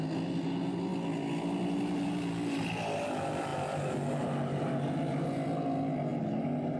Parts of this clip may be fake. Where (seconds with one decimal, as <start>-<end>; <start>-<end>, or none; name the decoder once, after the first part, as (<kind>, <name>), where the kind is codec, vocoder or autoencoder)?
none